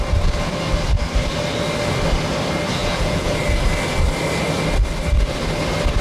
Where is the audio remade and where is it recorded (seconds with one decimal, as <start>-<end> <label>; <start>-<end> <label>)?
0.0-2.8 recorded; 2.8-3.3 remade; 3.3-6.0 recorded